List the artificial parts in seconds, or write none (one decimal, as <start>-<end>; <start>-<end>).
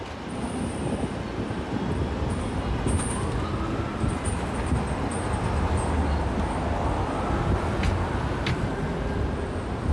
none